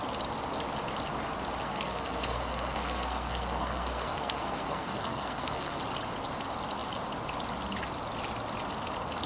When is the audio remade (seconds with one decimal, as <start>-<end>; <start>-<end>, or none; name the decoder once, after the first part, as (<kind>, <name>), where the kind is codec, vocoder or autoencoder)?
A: 1.6-5.8 (codec, SNAC)